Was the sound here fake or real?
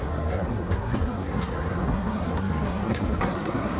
fake